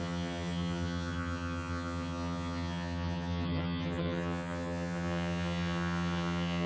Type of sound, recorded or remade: remade